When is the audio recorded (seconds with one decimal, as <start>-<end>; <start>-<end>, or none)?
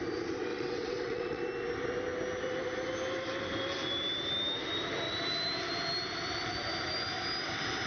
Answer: 0.0-0.5; 1.4-7.9